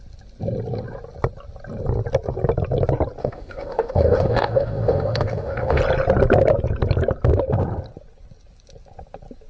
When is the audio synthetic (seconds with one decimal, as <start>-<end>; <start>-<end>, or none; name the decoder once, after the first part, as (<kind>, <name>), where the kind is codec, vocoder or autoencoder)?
3.2-5.8 (autoencoder, DAC-VAE)